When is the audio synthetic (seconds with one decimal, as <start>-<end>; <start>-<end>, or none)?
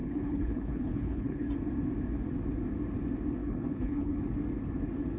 0.0-1.5; 3.4-4.2